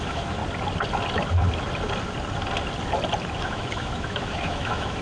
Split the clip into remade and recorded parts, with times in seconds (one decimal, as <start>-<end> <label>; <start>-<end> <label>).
0.0-0.4 remade; 0.4-3.4 recorded; 3.4-5.0 remade